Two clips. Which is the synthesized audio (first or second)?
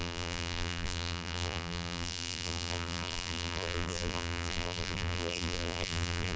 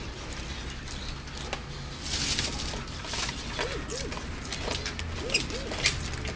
first